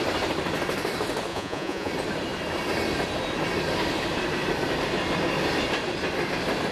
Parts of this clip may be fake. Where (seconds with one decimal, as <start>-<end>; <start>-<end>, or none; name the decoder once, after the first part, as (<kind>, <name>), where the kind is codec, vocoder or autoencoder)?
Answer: 1.3-1.9 (vocoder, Vocos)